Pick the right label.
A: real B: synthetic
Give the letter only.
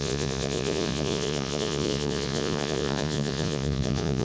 B